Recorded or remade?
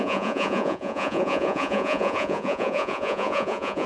remade